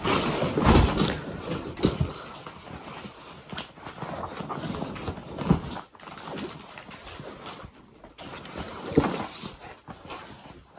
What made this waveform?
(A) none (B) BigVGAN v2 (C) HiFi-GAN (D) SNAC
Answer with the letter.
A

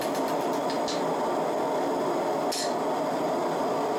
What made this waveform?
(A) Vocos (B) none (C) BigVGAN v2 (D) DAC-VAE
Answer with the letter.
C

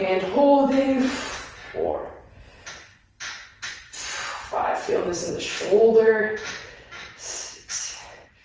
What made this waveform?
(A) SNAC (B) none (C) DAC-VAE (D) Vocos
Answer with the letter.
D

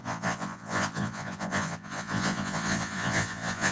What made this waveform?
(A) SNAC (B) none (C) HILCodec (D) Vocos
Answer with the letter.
D